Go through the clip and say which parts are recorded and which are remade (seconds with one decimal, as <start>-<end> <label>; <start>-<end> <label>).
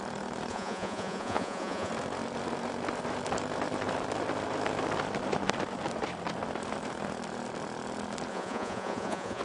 0.0-0.5 recorded; 0.5-1.9 remade; 1.9-8.3 recorded; 8.3-9.4 remade